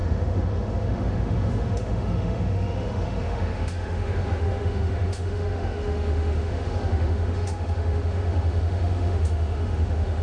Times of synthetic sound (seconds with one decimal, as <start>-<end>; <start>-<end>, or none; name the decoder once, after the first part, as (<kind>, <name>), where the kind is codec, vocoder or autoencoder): 0.0-10.2 (autoencoder, DAC-VAE)